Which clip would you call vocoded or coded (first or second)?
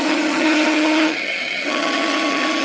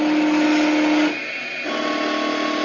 first